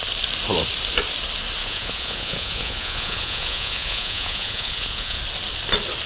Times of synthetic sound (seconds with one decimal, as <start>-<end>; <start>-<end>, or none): 1.6-5.2